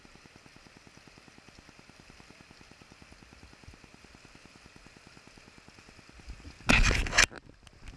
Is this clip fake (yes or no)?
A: no